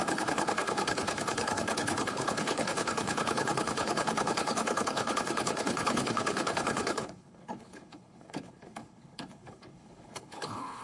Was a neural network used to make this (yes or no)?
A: yes